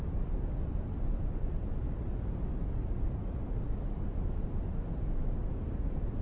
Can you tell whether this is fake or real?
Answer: real